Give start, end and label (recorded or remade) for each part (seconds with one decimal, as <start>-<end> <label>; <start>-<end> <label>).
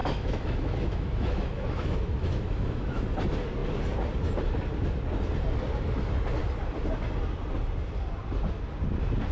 0.0-3.0 remade; 3.0-9.3 recorded